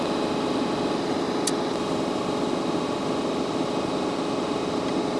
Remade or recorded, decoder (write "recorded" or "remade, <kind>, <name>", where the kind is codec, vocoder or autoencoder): recorded